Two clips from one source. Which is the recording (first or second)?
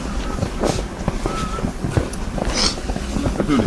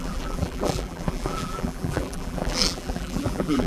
first